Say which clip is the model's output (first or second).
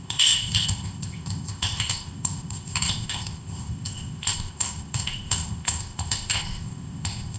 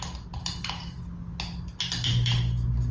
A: first